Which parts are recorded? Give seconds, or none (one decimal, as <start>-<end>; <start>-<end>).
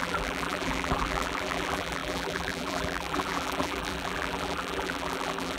none